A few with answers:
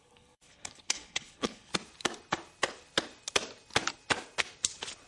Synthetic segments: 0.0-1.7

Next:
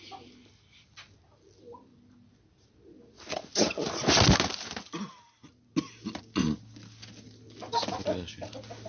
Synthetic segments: none